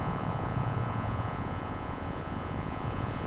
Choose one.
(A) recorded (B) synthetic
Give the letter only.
B